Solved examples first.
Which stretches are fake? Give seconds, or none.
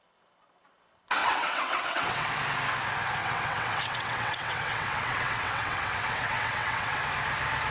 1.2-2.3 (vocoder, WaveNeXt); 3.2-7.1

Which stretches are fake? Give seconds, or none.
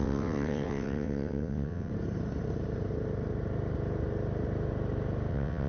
0.0-1.9 (vocoder, WaveNeXt); 5.3-5.7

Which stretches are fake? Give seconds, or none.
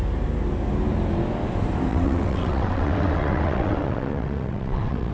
1.9-5.1 (vocoder, WaveNeXt)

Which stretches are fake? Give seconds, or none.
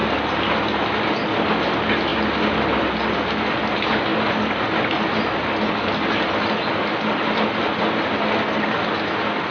none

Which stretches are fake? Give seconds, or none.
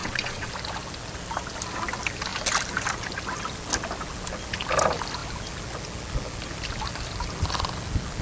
0.0-0.5 (vocoder, WaveNeXt)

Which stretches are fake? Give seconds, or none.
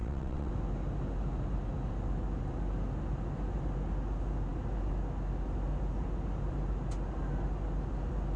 0.0-0.5 (vocoder, WaveNeXt)